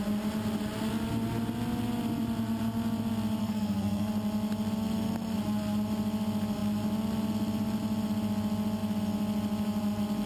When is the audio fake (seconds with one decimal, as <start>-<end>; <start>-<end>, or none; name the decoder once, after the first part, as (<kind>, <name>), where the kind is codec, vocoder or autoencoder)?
3.4-4.1 (codec, SNAC)